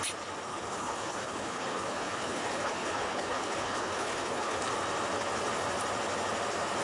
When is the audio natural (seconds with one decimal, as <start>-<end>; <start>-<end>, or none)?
0.0-0.5; 4.6-6.8